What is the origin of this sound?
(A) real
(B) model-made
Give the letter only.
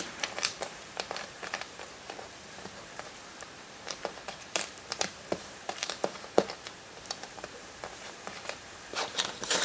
B